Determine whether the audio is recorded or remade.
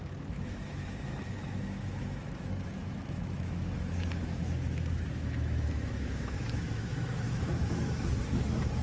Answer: remade